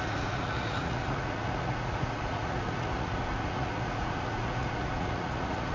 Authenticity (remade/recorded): remade